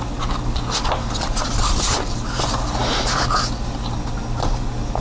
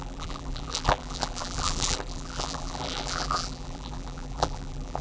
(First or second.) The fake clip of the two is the second